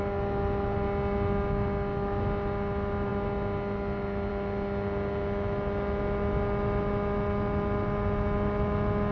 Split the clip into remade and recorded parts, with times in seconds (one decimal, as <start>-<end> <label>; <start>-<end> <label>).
0.0-9.1 recorded